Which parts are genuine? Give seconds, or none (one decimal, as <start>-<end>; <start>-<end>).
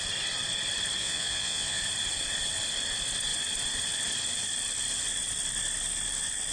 0.0-1.0; 1.8-6.5